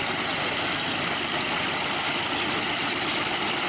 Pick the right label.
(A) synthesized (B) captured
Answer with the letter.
B